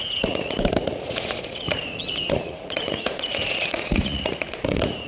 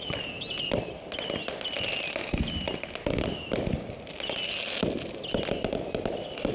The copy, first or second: first